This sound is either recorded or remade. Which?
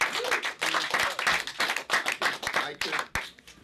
recorded